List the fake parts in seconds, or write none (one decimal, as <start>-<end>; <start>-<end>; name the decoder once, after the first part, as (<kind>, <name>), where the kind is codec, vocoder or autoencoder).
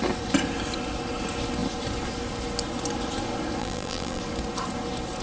3.6-4.2 (vocoder, BigVGAN v2)